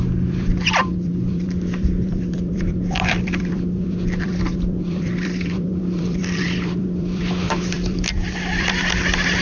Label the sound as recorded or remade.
remade